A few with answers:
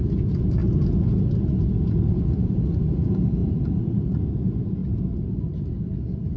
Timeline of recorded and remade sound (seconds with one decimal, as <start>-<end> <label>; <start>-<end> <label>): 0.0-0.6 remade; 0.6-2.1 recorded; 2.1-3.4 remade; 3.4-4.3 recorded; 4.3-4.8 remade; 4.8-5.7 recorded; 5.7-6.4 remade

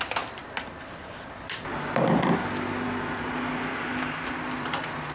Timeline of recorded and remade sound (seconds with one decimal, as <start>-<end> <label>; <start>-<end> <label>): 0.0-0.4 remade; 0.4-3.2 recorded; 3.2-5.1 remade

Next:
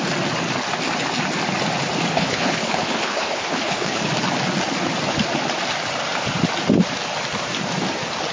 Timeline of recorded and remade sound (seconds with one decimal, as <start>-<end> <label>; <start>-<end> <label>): 0.0-2.1 recorded; 2.1-4.1 remade; 4.1-8.3 recorded

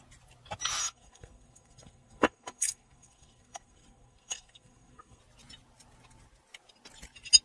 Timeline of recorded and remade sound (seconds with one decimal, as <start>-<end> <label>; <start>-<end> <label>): 0.0-0.8 recorded; 0.8-5.2 remade; 5.2-7.4 recorded

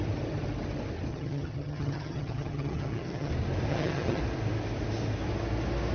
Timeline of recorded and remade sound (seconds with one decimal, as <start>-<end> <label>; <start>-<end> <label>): 0.0-1.1 recorded; 1.1-3.3 remade; 3.3-3.7 recorded; 3.7-4.2 remade; 4.2-5.9 recorded

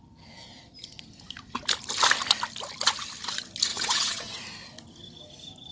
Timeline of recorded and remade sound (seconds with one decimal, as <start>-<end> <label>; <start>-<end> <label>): 0.0-3.7 recorded; 3.7-4.4 remade; 4.4-5.7 recorded

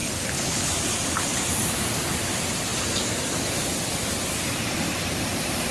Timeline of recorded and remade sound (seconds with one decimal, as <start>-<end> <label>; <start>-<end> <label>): 0.0-0.7 remade; 0.7-5.7 recorded

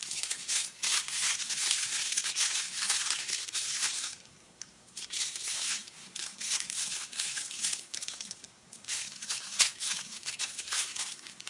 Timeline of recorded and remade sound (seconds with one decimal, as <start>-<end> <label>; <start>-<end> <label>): 0.0-11.5 remade